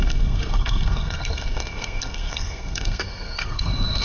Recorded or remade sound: remade